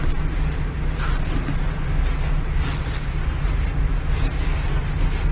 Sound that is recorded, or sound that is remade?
recorded